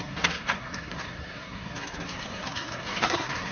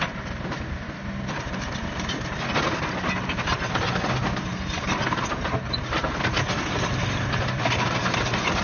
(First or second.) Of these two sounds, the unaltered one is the second